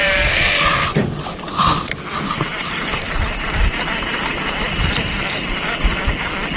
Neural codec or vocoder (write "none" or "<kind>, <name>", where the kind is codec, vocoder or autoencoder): none